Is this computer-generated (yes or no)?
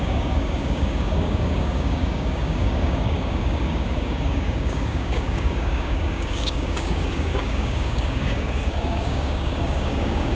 yes